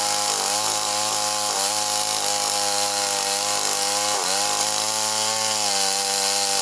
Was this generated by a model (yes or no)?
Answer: no